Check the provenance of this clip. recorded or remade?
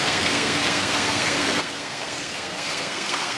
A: remade